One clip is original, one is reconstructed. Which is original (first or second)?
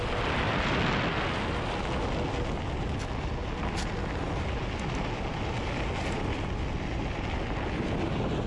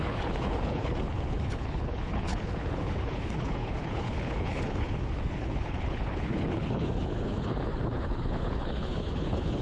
first